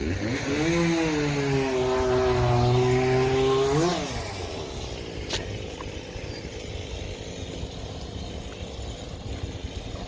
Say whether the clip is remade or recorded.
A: recorded